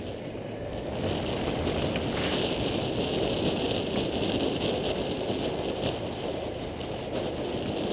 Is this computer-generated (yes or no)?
no